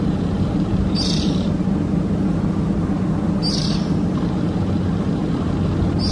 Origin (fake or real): fake